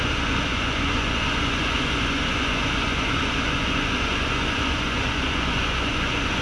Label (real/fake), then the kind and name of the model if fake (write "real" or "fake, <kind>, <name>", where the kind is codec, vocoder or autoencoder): fake, vocoder, Vocos